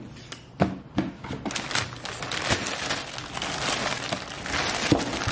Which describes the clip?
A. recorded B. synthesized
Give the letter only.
A